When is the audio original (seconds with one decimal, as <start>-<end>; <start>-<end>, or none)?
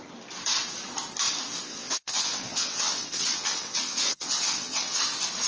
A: 0.0-1.7; 5.0-5.5